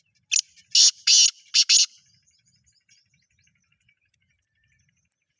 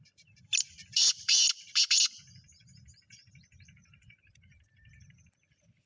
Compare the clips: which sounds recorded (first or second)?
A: first